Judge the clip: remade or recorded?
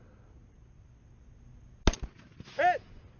recorded